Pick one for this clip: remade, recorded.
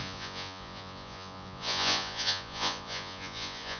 remade